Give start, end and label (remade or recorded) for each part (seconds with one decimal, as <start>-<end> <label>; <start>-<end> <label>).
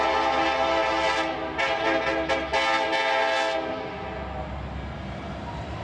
0.0-5.8 recorded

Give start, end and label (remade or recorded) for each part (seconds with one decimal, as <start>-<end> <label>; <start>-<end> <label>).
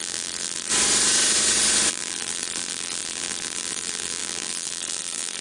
0.0-0.7 remade; 0.7-1.9 recorded; 1.9-5.4 remade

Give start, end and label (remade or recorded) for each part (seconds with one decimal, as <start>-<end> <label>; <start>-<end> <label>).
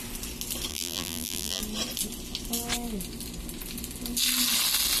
0.0-0.7 recorded; 0.7-1.6 remade; 1.6-5.0 recorded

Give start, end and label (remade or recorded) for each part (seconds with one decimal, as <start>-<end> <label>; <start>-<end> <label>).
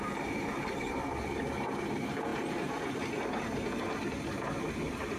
0.0-5.2 remade